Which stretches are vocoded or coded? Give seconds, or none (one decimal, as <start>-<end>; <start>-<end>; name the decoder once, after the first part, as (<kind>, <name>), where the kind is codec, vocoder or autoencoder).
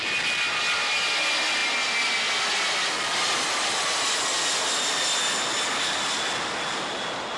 none